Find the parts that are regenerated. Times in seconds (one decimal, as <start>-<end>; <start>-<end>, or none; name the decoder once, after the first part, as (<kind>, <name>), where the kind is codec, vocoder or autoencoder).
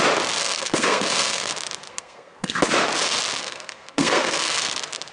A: 0.4-1.5 (codec, SNAC); 1.9-2.6; 3.4-4.6